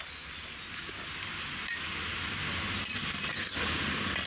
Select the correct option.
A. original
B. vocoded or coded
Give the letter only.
A